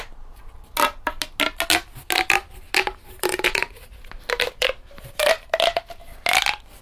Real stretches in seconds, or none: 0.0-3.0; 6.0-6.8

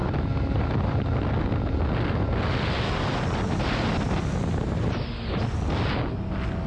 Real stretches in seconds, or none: 1.4-6.7

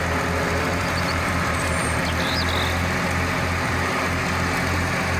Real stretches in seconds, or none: 0.0-0.7; 2.0-5.2

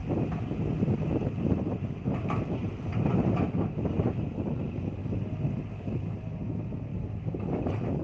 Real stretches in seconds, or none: 0.0-5.0; 6.2-8.0

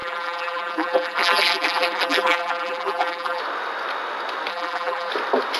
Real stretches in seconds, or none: 3.4-4.5; 5.1-5.6